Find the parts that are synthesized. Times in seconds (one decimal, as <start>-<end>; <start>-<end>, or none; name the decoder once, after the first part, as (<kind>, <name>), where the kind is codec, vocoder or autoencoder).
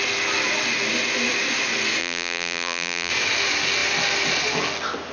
2.0-3.1 (vocoder, BigVGAN v2)